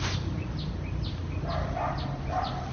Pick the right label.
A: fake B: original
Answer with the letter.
B